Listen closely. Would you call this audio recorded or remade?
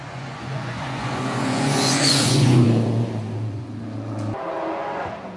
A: remade